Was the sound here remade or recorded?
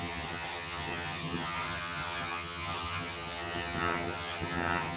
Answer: remade